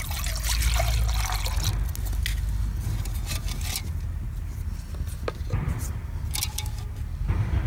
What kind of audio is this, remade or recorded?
recorded